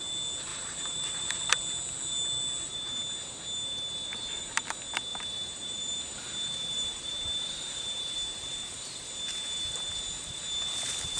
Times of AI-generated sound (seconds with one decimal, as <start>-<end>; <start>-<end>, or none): 0.5-1.4; 5.1-8.7